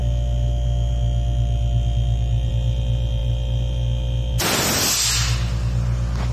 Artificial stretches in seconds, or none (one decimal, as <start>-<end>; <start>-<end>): none